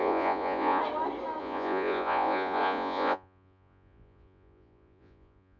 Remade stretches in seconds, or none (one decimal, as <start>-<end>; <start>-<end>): 0.0-0.8; 1.4-5.6